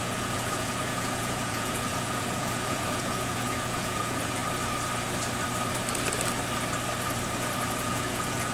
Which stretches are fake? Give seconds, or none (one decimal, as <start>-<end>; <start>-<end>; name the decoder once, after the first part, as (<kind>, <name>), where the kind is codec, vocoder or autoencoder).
0.0-4.4 (vocoder, Vocos); 7.7-8.5